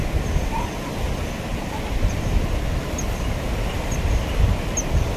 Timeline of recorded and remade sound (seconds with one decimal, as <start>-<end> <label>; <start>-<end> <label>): 0.0-1.5 recorded; 1.5-4.6 remade; 4.6-5.2 recorded